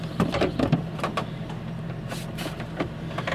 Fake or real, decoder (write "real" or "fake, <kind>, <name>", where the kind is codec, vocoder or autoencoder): fake, vocoder, BigVGAN v2